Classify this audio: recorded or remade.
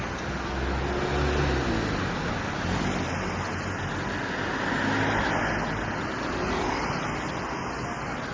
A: recorded